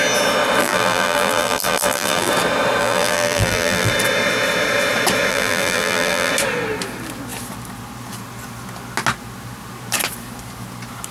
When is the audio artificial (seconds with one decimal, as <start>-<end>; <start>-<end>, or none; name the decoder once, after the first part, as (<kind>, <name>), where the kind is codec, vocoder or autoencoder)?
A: 0.6-2.3 (vocoder, BigVGAN v2); 2.8-3.9; 5.3-6.3